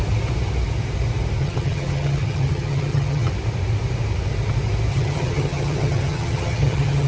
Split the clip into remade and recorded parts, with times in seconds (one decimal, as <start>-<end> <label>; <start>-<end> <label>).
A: 0.0-1.4 recorded; 1.4-3.3 remade; 3.3-4.9 recorded; 4.9-7.1 remade